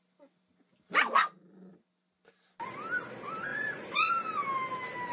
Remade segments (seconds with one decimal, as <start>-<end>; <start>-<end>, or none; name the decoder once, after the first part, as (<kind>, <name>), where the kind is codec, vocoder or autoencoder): 3.5-4.1 (vocoder, Vocos)